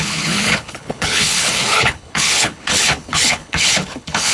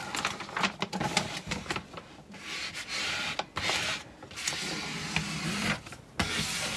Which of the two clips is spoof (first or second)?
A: first